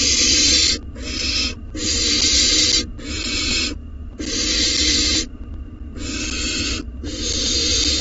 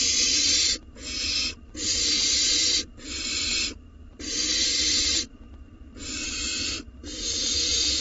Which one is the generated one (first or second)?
second